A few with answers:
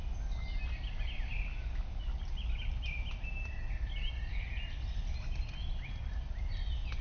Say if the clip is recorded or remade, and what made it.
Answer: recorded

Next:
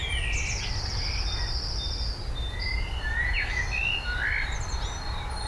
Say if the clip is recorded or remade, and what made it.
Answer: recorded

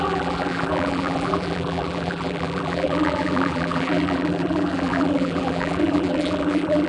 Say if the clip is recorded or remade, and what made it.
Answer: remade, vocoder, BigVGAN v2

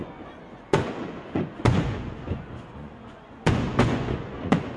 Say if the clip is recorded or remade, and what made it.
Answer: remade, vocoder, Vocos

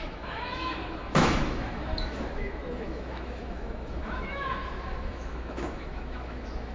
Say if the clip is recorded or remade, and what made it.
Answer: remade, autoencoder, DAC-VAE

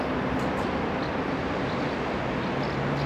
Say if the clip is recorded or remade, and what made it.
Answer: recorded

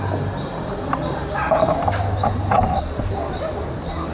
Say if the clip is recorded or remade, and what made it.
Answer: recorded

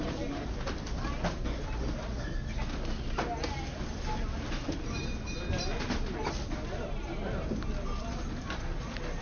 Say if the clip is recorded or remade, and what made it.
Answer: recorded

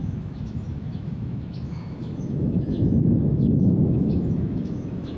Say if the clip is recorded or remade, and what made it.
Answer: remade, autoencoder, DAC-VAE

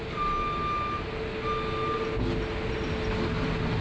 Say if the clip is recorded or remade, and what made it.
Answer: recorded